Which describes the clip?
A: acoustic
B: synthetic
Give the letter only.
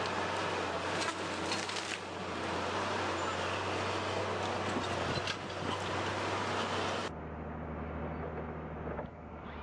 A